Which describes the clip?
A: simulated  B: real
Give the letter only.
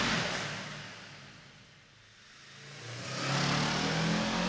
B